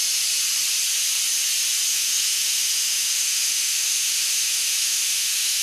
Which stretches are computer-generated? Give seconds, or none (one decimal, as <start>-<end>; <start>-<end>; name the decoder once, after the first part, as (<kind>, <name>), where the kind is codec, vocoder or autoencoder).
1.9-5.6 (autoencoder, DAC-VAE)